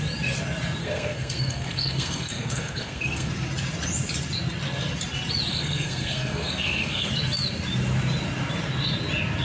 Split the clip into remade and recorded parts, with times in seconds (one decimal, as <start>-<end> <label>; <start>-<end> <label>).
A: 0.0-0.8 recorded; 0.8-3.3 remade; 3.3-5.5 recorded; 5.5-7.1 remade; 7.1-9.4 recorded